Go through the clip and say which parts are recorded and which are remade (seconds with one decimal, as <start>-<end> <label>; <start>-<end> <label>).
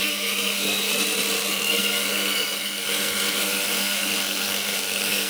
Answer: 0.0-0.9 remade; 0.9-1.5 recorded; 1.5-5.3 remade